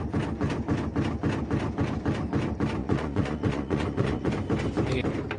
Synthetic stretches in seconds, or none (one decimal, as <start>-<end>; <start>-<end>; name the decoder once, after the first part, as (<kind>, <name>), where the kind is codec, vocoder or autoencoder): 2.8-4.3 (vocoder, Vocos)